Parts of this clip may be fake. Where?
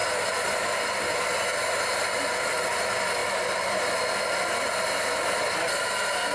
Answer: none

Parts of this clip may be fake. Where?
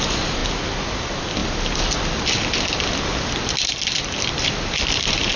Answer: 0.0-0.4; 1.0-3.1; 5.0-5.4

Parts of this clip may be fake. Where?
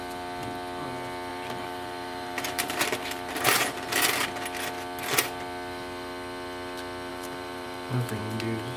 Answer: 1.3-3.9; 7.1-8.2